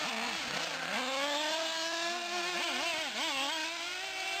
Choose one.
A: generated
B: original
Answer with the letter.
B